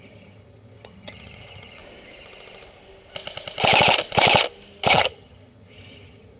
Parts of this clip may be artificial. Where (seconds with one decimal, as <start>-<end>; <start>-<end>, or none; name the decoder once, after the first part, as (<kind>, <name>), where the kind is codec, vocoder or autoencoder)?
0.0-1.8 (vocoder, HiFi-GAN); 4.9-6.4